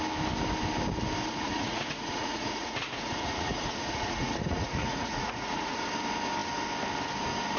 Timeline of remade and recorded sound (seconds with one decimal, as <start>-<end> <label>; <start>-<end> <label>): 0.0-1.3 recorded; 1.3-5.9 remade; 5.9-7.6 recorded